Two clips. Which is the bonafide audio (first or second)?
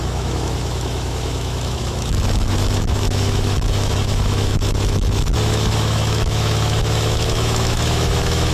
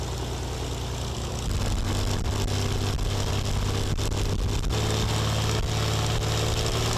second